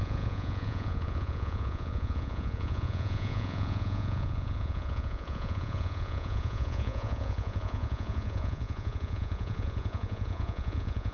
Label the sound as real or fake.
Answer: fake